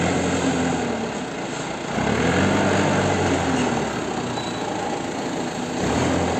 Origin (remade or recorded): recorded